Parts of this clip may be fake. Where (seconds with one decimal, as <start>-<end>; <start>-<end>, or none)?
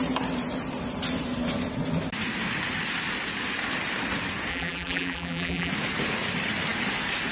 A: 4.5-5.7